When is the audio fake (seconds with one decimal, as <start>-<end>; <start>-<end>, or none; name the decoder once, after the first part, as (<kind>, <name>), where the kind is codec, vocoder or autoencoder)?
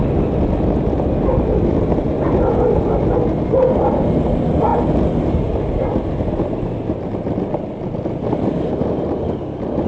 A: none